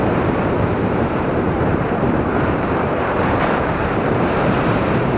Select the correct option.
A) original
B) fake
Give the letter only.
B